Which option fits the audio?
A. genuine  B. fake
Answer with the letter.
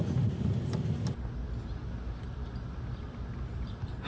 A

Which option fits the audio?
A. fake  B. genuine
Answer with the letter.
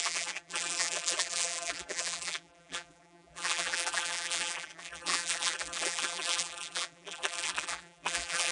A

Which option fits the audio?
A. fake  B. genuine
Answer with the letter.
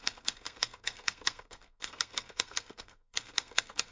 A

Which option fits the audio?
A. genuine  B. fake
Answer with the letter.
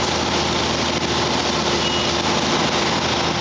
A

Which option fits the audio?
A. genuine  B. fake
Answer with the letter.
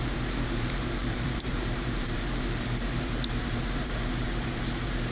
B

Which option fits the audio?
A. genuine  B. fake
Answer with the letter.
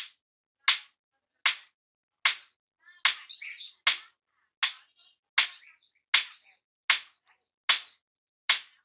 A